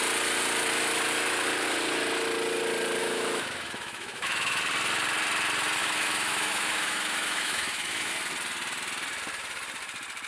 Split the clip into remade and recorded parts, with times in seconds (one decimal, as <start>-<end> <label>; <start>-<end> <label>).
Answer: 0.0-3.0 recorded; 3.0-4.6 remade; 4.6-5.8 recorded; 5.8-8.1 remade; 8.1-10.3 recorded